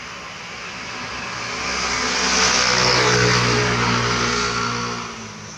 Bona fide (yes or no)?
yes